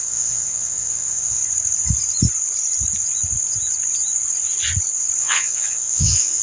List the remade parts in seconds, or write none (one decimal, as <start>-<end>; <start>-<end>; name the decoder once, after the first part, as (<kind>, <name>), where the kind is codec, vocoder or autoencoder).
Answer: 0.0-1.4 (vocoder, WaveNeXt); 5.2-6.4